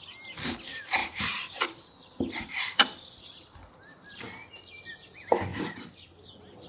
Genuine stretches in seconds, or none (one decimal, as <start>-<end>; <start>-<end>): 0.0-1.0; 4.6-5.5; 6.3-6.7

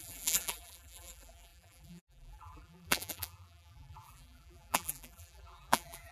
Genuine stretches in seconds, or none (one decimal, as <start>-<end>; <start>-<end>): none

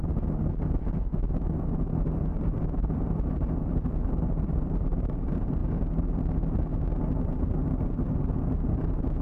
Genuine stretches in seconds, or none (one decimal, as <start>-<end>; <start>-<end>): 5.6-7.2

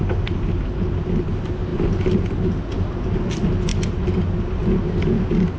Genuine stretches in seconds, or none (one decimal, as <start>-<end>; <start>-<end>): 0.0-5.6